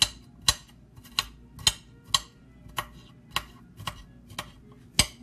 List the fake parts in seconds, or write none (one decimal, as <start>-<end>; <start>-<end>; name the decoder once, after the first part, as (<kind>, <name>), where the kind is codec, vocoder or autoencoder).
none